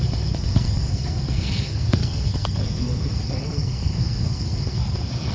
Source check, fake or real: fake